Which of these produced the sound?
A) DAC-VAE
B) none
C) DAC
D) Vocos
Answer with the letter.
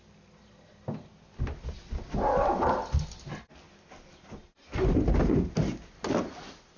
B